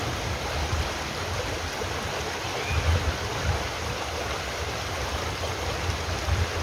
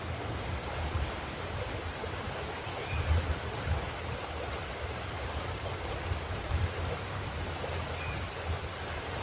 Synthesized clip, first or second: second